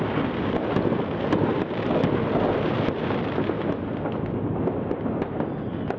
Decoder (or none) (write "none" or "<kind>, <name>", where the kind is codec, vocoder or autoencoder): none